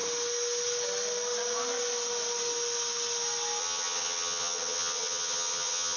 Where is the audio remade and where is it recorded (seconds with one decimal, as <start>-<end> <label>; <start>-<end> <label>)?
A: 0.0-3.6 recorded; 3.6-6.0 remade